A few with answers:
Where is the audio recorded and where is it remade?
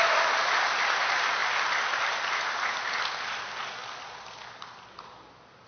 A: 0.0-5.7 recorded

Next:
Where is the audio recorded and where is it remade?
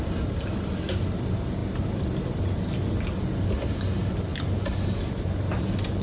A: 0.0-6.0 recorded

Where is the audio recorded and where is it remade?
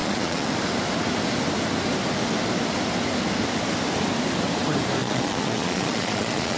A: 0.0-0.5 remade; 0.5-5.0 recorded; 5.0-6.6 remade